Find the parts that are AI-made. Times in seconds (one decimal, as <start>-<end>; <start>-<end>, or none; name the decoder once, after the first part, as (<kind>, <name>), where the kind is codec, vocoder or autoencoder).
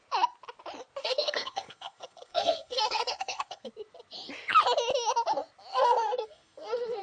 1.0-3.7 (codec, SNAC); 5.7-7.0